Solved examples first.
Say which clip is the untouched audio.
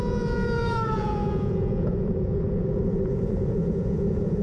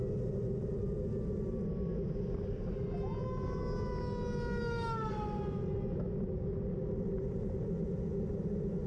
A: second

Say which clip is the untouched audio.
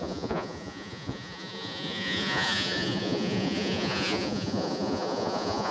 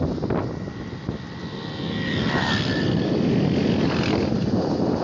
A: second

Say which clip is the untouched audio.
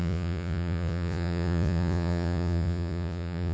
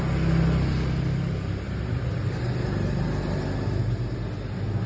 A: second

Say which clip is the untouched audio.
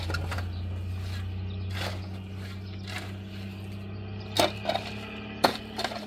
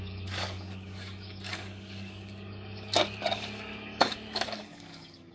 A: first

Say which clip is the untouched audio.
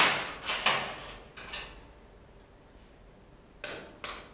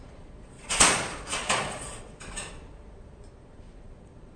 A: first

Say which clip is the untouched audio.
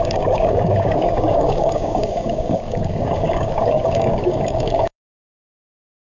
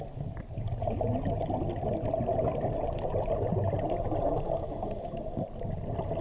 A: second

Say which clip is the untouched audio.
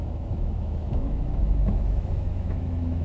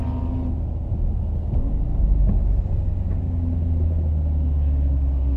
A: second